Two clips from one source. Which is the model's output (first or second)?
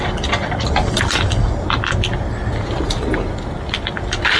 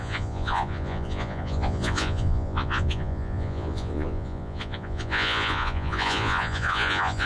second